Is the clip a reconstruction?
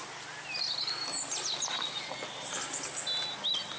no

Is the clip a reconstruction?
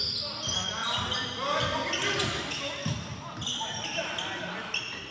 no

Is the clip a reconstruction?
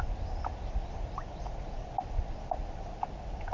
no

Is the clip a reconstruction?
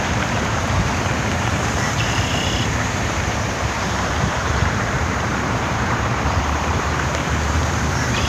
yes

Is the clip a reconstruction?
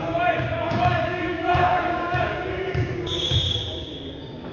yes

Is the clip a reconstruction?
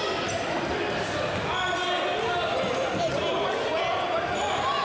no